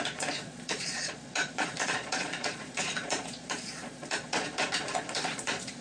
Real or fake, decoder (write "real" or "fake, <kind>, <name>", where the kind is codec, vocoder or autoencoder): fake, vocoder, Vocos